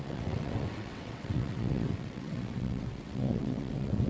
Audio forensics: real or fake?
fake